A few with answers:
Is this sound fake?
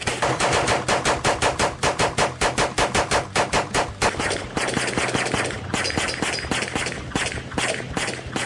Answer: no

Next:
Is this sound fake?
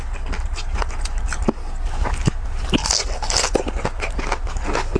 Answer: no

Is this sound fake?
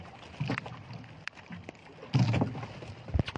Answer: no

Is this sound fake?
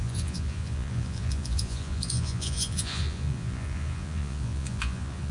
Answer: yes